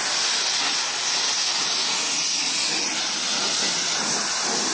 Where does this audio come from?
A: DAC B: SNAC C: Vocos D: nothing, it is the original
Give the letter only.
D